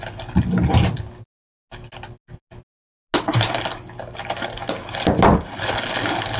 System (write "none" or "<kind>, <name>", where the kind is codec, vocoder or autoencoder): none